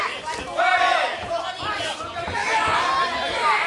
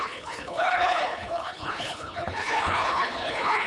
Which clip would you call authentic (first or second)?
first